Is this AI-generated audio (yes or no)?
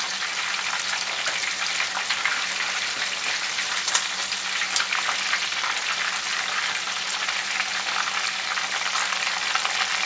no